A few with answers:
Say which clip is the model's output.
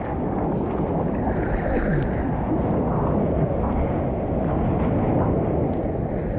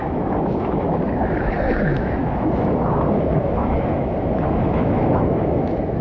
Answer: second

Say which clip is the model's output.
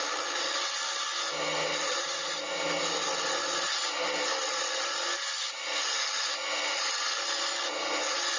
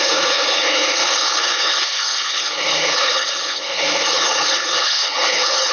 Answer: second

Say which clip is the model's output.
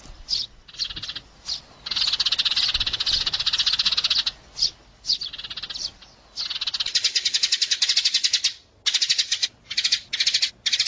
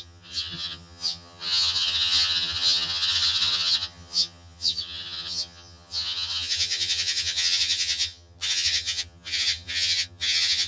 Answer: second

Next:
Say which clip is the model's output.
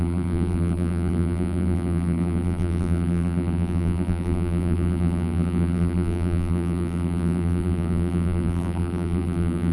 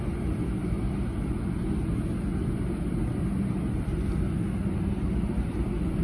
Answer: first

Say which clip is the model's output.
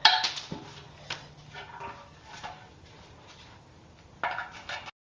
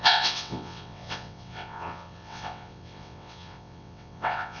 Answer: second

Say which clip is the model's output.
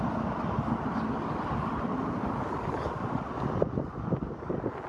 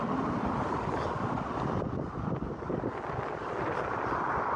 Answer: second